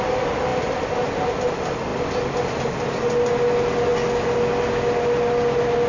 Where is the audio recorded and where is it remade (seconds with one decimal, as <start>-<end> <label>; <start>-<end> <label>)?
0.0-5.9 recorded